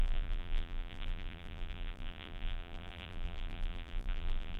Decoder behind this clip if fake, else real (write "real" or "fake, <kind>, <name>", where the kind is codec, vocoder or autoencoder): fake, vocoder, BigVGAN v2